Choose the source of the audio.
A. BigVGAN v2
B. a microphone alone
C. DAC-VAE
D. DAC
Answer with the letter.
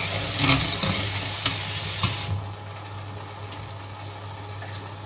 B